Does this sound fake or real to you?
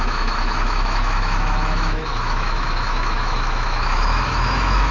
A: fake